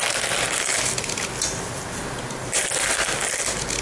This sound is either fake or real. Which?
real